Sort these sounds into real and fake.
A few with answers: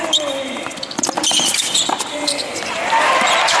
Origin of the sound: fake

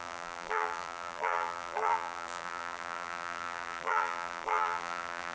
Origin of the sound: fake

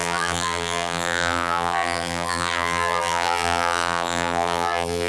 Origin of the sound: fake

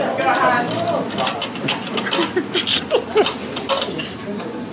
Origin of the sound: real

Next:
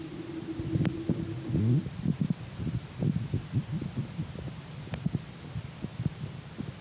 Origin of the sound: real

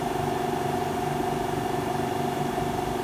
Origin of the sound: real